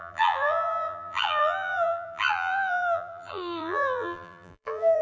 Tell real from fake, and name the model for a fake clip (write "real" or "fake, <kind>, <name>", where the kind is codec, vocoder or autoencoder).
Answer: fake, vocoder, BigVGAN v2